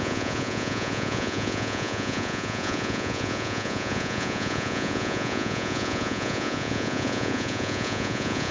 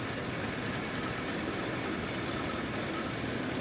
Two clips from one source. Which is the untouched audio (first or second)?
second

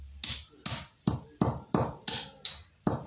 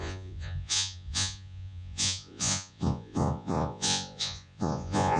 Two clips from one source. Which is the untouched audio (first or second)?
first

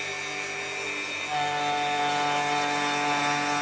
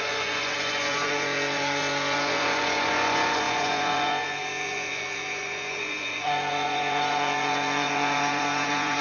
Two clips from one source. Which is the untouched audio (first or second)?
first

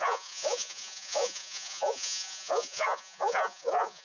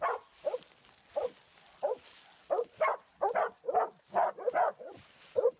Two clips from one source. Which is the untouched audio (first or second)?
second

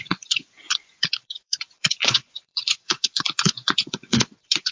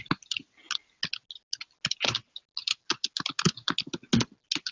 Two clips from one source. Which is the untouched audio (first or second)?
second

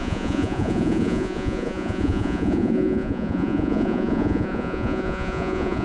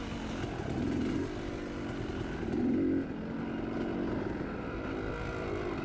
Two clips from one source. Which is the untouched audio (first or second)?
second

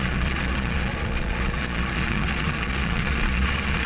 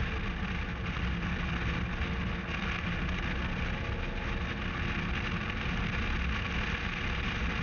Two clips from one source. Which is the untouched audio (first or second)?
second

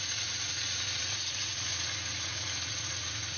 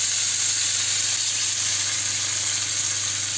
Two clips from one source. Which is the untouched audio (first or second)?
second